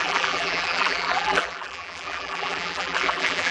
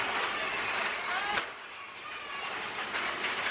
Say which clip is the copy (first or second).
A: first